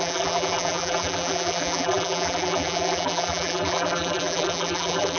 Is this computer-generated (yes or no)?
yes